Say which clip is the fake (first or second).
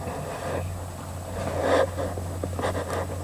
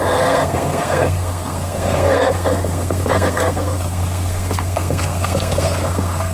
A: second